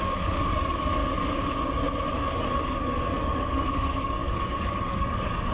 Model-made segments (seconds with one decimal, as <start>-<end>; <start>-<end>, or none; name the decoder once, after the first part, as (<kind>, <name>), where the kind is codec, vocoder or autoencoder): 0.0-1.0 (codec, DAC); 2.1-5.5